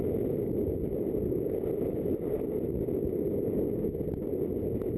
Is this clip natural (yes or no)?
yes